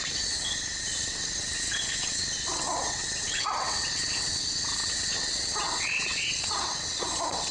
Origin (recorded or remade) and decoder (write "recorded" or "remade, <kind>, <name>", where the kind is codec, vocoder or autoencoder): remade, vocoder, WaveNeXt